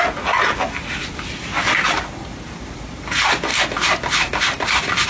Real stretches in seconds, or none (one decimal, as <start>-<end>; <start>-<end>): 0.0-5.1